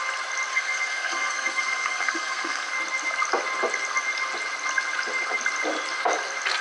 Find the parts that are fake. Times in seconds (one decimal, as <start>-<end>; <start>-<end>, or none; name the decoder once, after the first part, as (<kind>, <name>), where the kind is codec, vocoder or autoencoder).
0.5-2.7 (codec, SNAC)